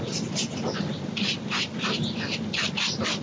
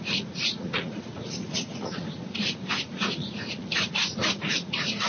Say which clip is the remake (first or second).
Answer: second